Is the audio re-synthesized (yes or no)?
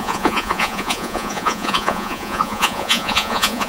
yes